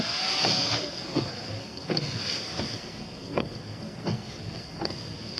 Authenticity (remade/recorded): remade